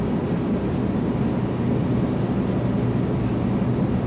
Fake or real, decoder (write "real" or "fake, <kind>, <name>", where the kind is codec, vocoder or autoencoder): real